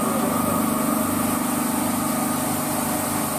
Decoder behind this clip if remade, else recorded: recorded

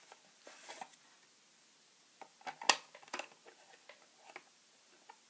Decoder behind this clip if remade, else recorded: recorded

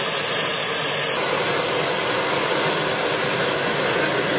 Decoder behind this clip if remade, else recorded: recorded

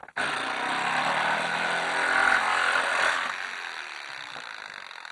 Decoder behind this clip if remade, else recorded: recorded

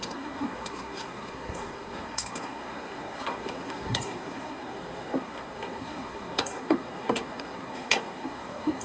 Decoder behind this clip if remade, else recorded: remade, codec, SNAC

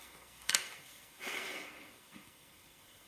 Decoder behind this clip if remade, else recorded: remade, codec, SNAC